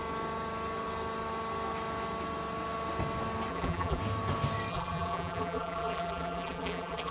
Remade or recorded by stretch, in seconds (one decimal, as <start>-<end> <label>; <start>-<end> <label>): 0.0-3.5 recorded; 3.5-4.0 remade; 4.0-4.7 recorded; 4.7-7.1 remade